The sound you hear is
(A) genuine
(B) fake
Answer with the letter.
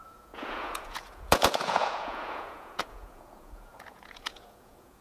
B